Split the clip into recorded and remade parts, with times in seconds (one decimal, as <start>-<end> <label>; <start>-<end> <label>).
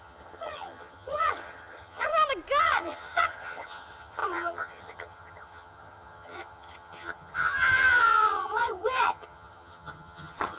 0.0-2.1 remade; 2.1-2.6 recorded; 2.6-10.6 remade